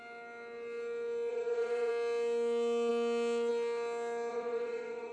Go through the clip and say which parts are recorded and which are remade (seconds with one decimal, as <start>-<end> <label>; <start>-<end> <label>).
0.0-1.3 recorded; 1.3-1.9 remade; 1.9-4.3 recorded; 4.3-5.1 remade